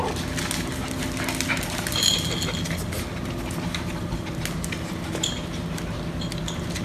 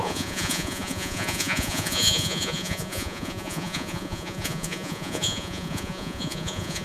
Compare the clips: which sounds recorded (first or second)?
first